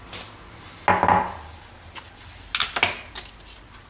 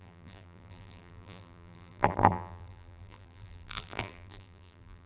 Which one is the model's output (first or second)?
second